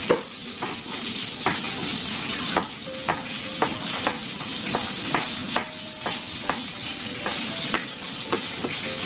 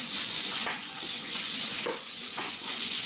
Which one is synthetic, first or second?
second